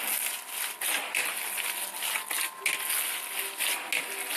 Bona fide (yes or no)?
yes